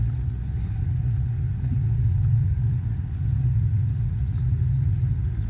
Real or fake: fake